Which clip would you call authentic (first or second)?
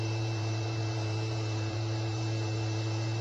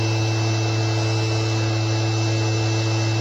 second